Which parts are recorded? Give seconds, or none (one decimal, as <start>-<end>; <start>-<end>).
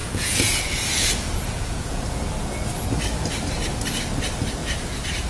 2.0-5.3